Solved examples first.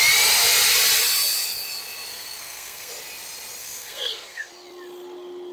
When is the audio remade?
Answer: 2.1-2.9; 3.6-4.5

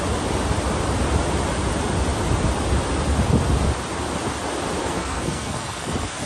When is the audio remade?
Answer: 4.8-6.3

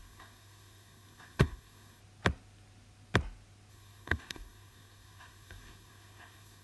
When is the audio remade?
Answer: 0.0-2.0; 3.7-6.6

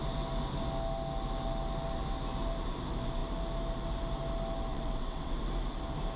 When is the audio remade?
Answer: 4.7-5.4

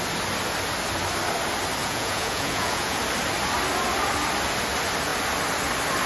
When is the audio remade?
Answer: 1.8-3.0

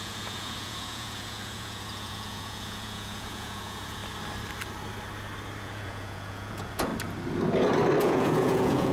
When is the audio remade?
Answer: 0.0-4.0; 5.6-6.9; 8.0-8.9